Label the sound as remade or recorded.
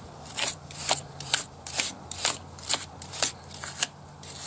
remade